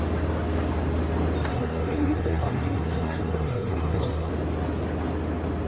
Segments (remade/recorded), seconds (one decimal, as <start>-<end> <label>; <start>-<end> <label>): 0.0-1.5 recorded; 1.5-4.3 remade; 4.3-5.7 recorded